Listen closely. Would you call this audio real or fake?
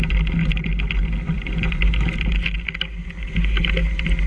real